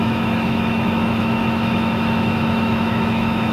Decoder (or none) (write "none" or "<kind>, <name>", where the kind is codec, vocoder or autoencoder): autoencoder, DAC-VAE